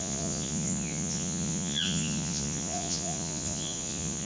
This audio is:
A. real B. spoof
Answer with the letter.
B